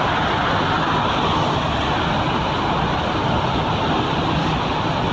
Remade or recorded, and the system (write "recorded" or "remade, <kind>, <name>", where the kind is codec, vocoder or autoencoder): recorded